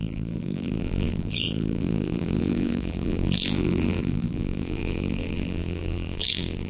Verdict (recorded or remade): remade